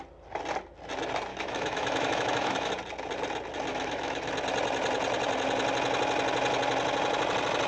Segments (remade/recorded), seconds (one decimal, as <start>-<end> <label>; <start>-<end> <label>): 0.0-1.3 recorded; 1.3-2.7 remade; 2.7-3.7 recorded; 3.7-4.3 remade; 4.3-7.7 recorded